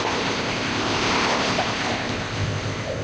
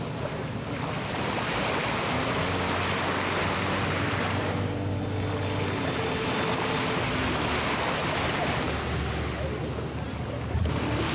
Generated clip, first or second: first